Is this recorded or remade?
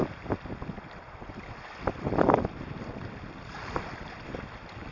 recorded